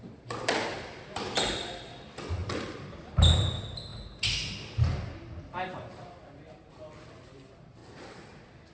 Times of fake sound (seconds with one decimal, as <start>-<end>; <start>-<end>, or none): none